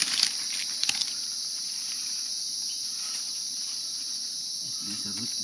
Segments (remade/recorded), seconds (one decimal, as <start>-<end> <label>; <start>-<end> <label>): 0.0-1.2 recorded; 1.2-4.4 remade; 4.4-5.4 recorded